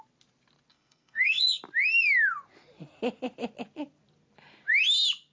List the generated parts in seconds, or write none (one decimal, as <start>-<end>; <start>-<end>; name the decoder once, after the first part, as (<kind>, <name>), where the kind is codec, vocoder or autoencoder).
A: 0.7-1.6 (codec, SNAC)